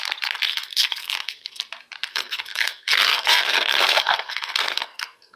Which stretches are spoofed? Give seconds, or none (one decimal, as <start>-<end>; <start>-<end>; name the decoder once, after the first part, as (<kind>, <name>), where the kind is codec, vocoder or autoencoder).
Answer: 0.5-1.6 (codec, SNAC); 2.1-5.4